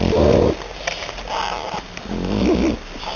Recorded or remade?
recorded